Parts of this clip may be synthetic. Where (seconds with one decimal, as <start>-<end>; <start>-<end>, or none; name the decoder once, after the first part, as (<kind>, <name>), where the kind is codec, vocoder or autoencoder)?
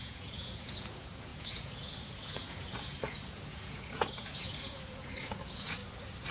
0.0-5.8 (vocoder, Vocos)